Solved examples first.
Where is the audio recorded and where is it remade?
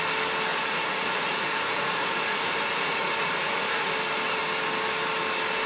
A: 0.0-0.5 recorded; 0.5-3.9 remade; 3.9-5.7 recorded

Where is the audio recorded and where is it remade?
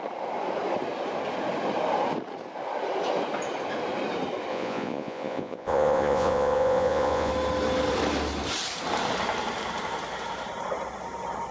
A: 0.0-4.5 recorded; 4.5-7.3 remade; 7.3-11.5 recorded